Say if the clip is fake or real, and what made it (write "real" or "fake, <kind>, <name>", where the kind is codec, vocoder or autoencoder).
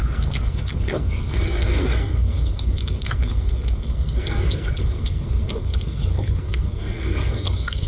fake, codec, SNAC